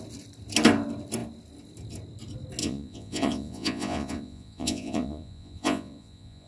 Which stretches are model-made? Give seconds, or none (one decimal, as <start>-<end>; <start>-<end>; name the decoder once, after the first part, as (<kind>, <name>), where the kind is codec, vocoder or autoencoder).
2.6-6.5 (vocoder, Vocos)